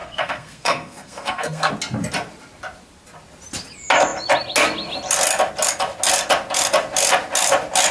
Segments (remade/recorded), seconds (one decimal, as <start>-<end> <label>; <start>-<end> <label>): 0.0-1.7 remade; 1.7-7.9 recorded